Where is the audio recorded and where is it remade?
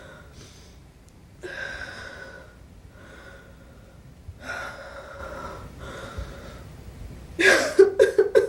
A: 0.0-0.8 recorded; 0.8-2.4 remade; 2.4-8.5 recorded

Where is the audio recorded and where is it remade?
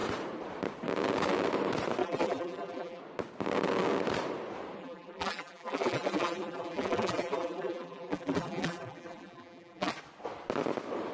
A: 0.0-2.0 recorded; 2.0-3.0 remade; 3.0-4.8 recorded; 4.8-9.9 remade; 9.9-11.1 recorded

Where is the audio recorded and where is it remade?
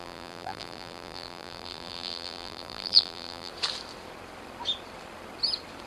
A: 0.0-3.5 remade; 3.5-5.9 recorded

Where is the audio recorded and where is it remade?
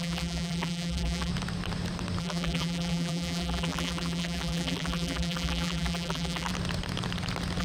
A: 0.0-1.3 remade; 1.3-2.2 recorded; 2.2-6.5 remade; 6.5-7.6 recorded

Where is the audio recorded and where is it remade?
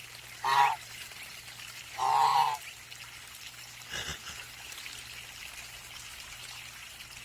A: 0.0-7.2 recorded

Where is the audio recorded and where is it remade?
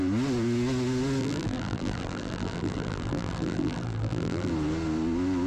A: 0.0-1.2 recorded; 1.2-4.5 remade; 4.5-5.5 recorded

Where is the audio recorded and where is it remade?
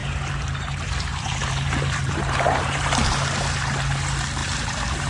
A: 0.0-3.1 remade; 3.1-4.4 recorded; 4.4-5.1 remade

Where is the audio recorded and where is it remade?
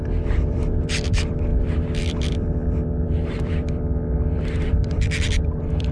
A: 0.0-5.9 remade